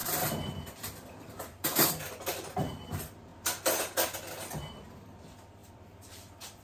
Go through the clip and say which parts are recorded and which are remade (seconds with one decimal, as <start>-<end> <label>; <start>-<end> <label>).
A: 0.0-3.3 remade; 3.3-4.8 recorded; 4.8-6.6 remade